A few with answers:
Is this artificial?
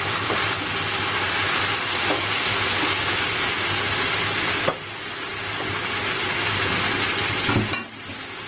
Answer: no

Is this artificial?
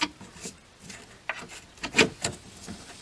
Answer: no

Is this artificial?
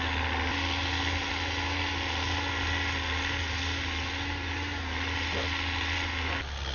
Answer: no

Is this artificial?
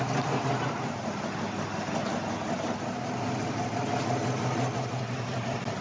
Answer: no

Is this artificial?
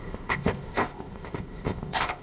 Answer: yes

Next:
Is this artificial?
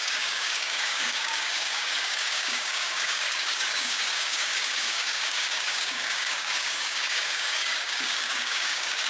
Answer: yes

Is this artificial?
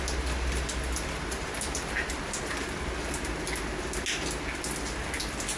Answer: no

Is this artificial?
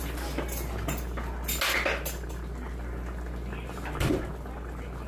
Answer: no